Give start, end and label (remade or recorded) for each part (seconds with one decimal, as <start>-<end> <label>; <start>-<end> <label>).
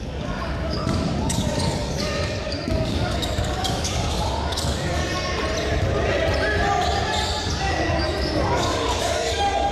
0.0-5.0 remade; 5.0-7.6 recorded; 7.6-9.7 remade